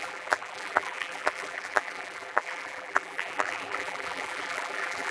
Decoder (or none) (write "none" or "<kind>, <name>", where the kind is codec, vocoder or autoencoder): vocoder, BigVGAN v2